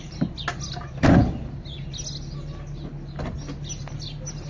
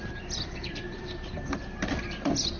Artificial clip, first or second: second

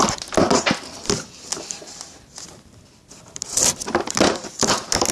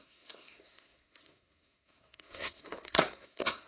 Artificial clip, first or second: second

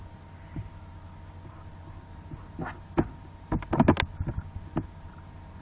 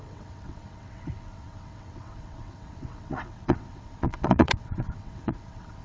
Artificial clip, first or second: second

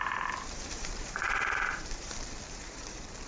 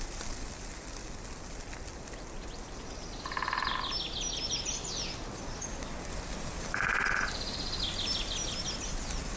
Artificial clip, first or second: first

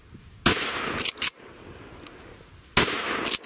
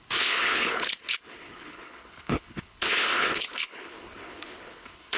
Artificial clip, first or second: second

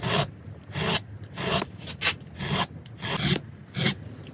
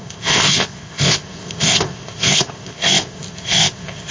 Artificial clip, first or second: second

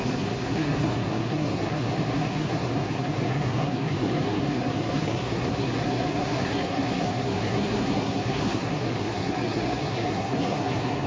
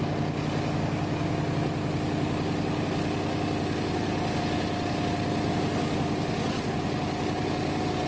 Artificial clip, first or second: first